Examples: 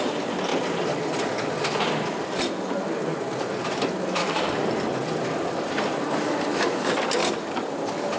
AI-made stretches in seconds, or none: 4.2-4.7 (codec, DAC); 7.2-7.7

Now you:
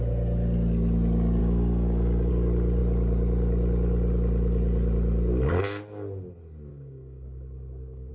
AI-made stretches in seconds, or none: 1.4-2.3 (codec, DAC); 6.7-8.1

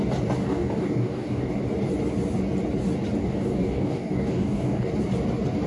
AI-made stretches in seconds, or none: 0.4-1.6 (codec, DAC); 3.2-4.9

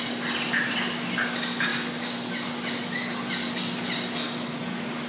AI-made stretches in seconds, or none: none

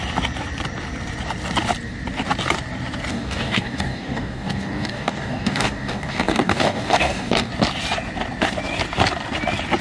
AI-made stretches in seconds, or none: 3.1-7.5 (codec, DAC)

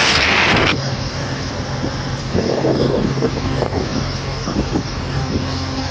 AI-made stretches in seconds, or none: 0.0-1.5 (codec, DAC); 2.2-5.9

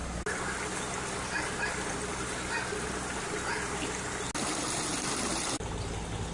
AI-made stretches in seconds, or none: none

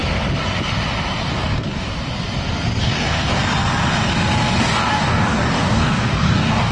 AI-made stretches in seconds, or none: 1.3-1.9 (codec, DAC); 2.8-3.4; 4.6-6.7